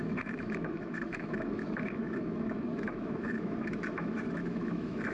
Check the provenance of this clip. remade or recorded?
remade